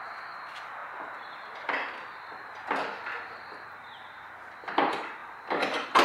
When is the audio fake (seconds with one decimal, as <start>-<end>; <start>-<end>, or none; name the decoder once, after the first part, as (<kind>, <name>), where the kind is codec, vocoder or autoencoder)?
none